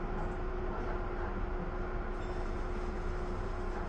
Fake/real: real